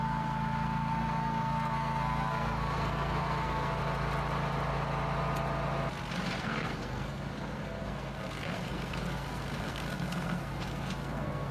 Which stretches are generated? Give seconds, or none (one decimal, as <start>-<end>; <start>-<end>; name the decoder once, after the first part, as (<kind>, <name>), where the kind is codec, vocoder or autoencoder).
0.0-3.8 (codec, SNAC); 6.4-11.5